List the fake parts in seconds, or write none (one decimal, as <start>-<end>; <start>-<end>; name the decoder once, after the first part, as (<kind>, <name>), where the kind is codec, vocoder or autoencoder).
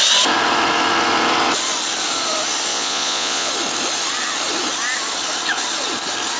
2.7-3.5 (vocoder, Vocos)